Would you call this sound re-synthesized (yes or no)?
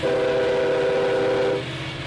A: no